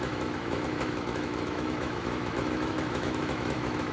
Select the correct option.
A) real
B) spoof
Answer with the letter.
B